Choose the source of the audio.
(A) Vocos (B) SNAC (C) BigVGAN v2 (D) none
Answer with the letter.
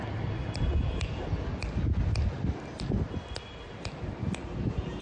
D